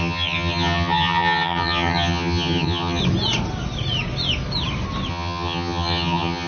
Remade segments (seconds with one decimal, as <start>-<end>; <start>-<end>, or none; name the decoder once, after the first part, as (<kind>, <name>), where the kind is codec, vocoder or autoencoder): 0.0-3.0 (vocoder, HiFi-GAN); 5.1-6.5